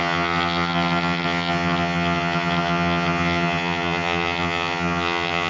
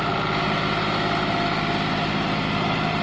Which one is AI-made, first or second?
first